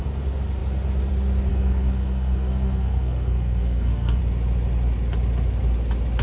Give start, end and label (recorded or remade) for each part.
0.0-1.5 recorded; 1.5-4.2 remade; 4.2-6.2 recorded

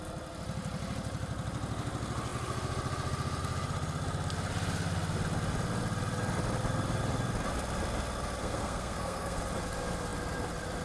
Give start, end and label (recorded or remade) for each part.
0.0-8.4 recorded; 8.4-9.4 remade; 9.4-10.8 recorded

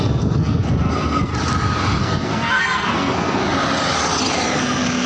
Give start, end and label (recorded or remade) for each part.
0.0-1.3 remade; 1.3-2.0 recorded; 2.0-3.4 remade; 3.4-4.6 recorded; 4.6-5.1 remade

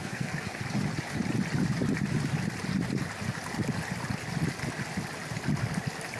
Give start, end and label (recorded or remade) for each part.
0.0-0.6 remade; 0.6-6.2 recorded

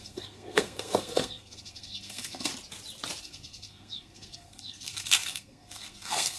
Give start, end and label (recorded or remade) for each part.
0.0-2.5 remade; 2.5-3.2 recorded; 3.2-6.4 remade

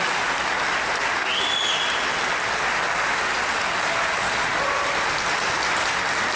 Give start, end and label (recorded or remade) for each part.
0.0-6.4 recorded